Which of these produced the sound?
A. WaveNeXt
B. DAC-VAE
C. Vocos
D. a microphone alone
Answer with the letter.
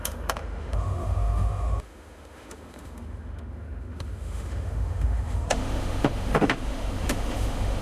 B